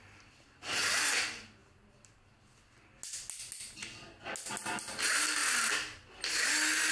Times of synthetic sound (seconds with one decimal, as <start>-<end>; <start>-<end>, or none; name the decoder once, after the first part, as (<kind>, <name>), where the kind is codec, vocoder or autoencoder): none